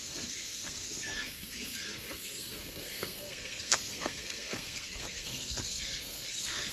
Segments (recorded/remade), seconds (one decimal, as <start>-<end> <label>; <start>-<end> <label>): 0.0-6.7 remade